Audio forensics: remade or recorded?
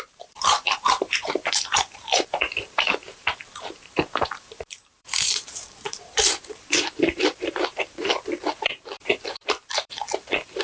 remade